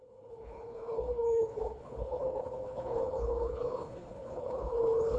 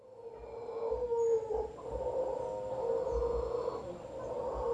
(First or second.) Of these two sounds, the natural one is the second